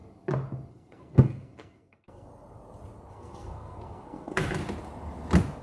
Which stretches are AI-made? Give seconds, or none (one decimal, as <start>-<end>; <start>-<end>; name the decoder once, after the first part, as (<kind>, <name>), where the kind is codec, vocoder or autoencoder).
0.7-2.3 (codec, SNAC); 3.1-4.6